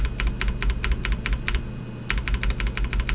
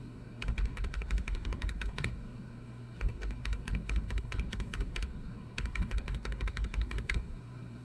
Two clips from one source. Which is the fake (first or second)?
second